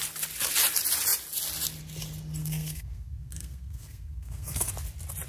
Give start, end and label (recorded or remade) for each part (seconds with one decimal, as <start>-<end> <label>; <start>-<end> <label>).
0.0-2.4 recorded; 2.4-4.7 remade; 4.7-5.3 recorded